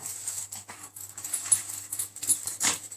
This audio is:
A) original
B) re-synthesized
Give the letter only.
B